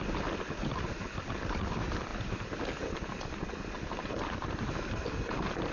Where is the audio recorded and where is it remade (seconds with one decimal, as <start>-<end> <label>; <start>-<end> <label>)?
0.0-5.7 recorded